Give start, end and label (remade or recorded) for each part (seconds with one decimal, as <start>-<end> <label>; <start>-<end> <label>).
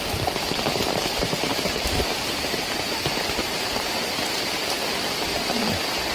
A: 0.0-0.8 recorded; 0.8-4.5 remade; 4.5-6.1 recorded